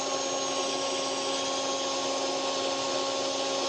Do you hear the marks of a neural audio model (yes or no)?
no